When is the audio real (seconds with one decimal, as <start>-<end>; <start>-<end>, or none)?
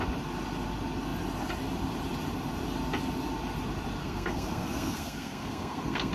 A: 0.0-4.0